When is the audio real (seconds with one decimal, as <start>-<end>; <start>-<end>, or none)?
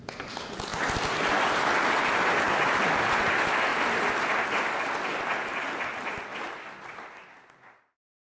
0.0-8.3